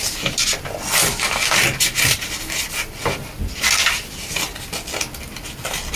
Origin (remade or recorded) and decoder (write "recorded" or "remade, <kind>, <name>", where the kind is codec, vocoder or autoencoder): recorded